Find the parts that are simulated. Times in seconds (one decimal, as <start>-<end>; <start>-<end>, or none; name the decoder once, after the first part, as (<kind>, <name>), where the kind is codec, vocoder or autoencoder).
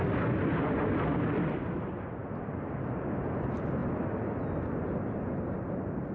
none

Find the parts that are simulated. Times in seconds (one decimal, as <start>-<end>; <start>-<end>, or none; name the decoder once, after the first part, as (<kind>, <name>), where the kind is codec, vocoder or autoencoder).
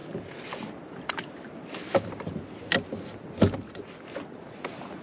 none